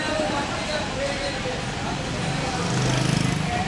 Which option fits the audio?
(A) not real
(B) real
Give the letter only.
B